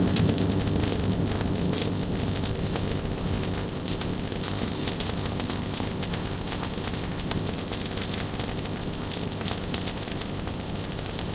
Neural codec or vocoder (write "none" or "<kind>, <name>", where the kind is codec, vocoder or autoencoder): codec, ZipCodec